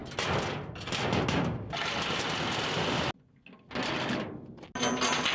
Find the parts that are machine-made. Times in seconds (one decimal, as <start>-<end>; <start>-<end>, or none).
none